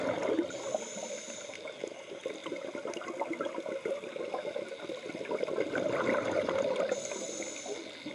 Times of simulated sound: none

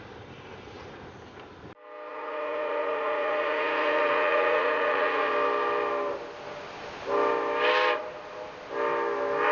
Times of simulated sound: 2.1-5.3 (vocoder, Vocos)